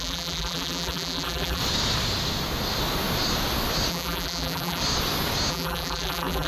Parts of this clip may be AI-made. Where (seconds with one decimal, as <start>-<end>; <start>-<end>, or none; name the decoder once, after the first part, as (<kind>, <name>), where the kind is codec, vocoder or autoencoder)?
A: 0.0-1.6 (vocoder, BigVGAN v2); 3.9-4.8; 5.5-6.5